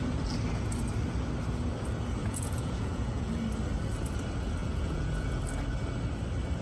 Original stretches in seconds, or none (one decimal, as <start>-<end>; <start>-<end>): 0.0-2.2; 3.3-4.6; 5.4-6.6